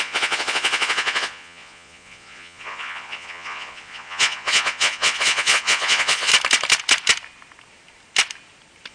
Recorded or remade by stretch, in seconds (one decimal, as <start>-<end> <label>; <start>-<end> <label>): 0.0-6.3 remade; 6.3-8.9 recorded